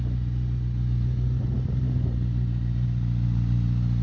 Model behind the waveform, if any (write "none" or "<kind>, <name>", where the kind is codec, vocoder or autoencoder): none